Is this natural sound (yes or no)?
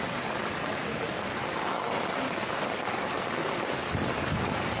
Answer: yes